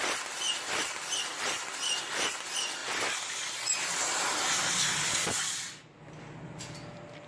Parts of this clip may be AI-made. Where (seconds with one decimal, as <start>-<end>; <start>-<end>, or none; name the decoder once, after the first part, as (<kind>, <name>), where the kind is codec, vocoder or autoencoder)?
none